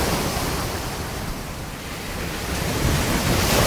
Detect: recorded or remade recorded